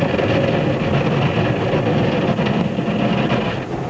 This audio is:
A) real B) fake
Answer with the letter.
A